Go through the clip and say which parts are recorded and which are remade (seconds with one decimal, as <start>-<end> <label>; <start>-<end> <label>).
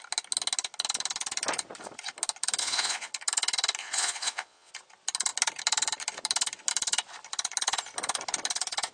0.0-2.6 recorded; 2.6-3.1 remade; 3.1-3.8 recorded; 3.8-4.7 remade; 4.7-8.9 recorded